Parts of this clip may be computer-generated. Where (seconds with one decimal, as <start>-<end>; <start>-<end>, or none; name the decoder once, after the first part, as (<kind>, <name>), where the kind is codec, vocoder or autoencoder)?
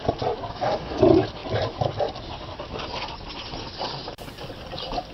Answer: 0.5-1.0 (codec, DAC)